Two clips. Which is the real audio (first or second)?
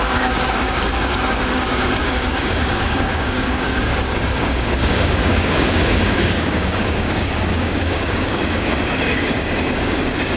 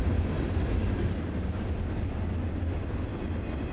second